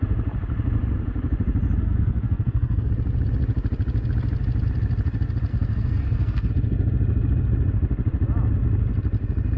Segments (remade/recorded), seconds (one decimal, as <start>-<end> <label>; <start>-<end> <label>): 0.0-1.8 recorded; 1.8-2.9 remade; 2.9-5.5 recorded; 5.5-6.5 remade; 6.5-9.6 recorded